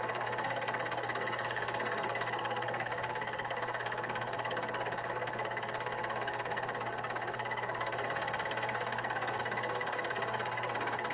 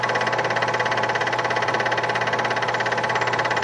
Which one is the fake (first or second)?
first